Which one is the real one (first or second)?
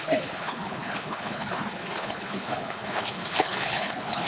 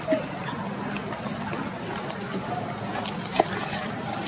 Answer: second